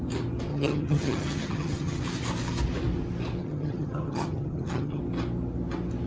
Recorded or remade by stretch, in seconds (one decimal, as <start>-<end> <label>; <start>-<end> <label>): 0.0-0.5 recorded; 0.5-2.0 remade; 2.0-3.4 recorded; 3.4-5.0 remade; 5.0-6.1 recorded